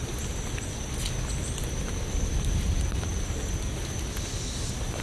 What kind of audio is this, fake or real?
real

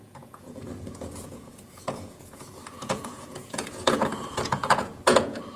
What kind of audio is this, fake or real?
fake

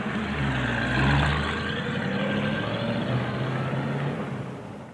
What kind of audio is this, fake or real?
real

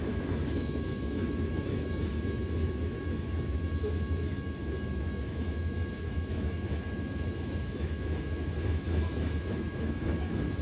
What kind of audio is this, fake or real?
fake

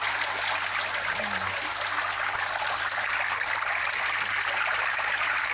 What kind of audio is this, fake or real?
real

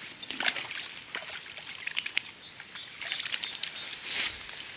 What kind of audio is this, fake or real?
real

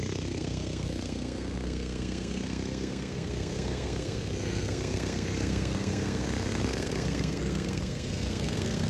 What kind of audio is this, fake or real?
fake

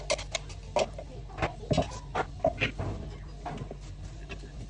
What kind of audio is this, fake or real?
real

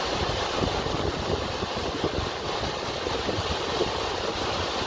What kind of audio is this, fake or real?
real